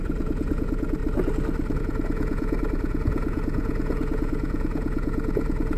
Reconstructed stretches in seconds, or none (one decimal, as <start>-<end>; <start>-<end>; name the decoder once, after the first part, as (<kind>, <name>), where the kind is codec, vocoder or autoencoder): 0.0-1.0 (vocoder, Vocos); 1.8-5.8